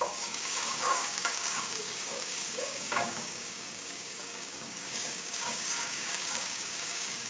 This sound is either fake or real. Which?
fake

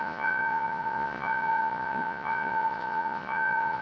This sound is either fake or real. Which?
fake